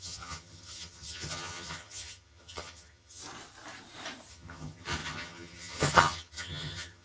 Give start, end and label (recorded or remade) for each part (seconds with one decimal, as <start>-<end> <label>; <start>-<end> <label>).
0.0-3.2 remade; 3.2-4.3 recorded; 4.3-7.0 remade